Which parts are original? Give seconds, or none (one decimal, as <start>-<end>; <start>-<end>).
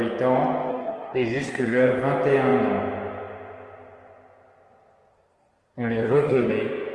0.0-0.7; 1.9-5.1; 6.5-6.9